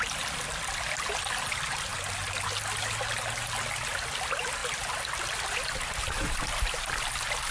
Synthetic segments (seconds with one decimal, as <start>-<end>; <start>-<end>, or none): none